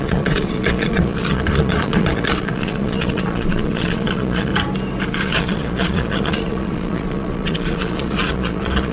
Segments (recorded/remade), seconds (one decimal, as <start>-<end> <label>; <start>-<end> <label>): 0.0-4.5 remade; 4.5-5.1 recorded; 5.1-8.9 remade